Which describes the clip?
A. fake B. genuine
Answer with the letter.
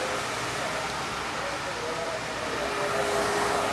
B